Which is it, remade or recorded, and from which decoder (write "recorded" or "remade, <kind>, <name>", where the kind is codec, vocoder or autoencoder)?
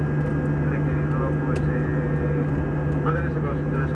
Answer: recorded